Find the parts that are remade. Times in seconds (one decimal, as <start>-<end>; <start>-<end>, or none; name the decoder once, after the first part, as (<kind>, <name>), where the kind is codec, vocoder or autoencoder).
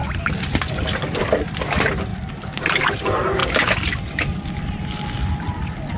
none